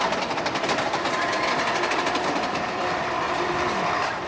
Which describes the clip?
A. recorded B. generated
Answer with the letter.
B